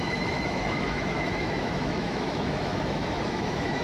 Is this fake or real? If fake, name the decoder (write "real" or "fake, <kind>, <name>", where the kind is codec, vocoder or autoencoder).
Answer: fake, autoencoder, DAC-VAE